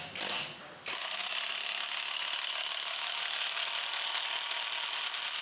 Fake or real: real